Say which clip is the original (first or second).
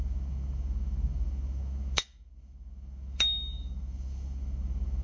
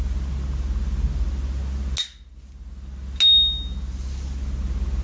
second